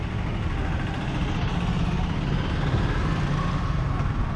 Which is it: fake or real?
real